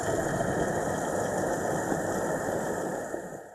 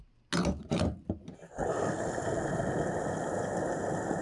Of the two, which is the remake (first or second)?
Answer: first